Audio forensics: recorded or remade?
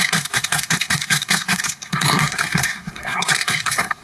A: remade